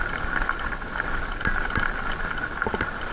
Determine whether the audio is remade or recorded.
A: recorded